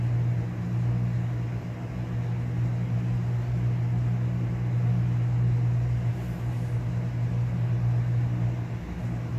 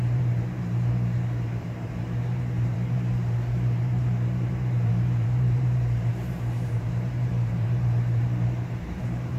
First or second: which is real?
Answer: first